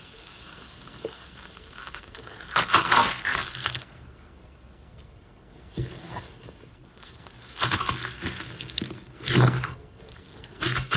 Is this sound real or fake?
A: fake